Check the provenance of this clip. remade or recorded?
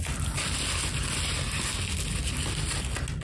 recorded